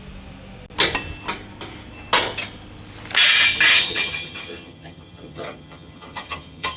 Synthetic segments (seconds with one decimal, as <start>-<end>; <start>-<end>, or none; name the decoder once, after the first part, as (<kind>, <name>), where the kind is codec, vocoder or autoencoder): 3.7-6.8 (vocoder, HiFi-GAN)